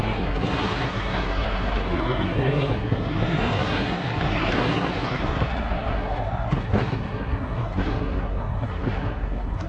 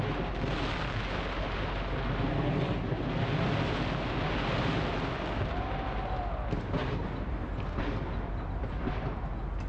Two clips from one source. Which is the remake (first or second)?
first